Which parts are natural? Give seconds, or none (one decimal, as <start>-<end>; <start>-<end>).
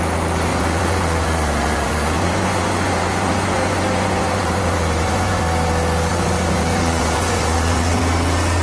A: 0.0-0.5; 5.4-6.1; 8.0-8.6